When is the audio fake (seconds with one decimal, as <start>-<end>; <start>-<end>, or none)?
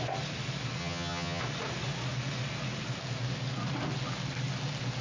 0.8-1.4